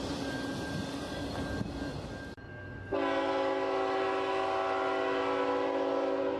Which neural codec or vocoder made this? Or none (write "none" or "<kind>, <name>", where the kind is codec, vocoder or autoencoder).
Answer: none